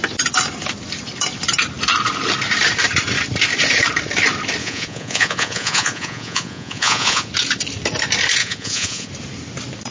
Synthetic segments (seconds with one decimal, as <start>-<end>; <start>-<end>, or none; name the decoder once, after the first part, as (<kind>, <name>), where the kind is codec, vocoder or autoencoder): 4.6-7.3 (vocoder, Vocos); 8.4-9.1